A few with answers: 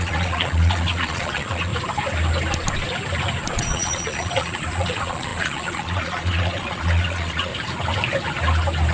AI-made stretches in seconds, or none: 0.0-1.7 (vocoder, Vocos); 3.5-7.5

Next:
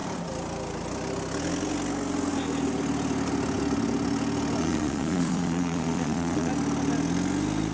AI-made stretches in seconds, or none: 4.6-6.5 (vocoder, Vocos)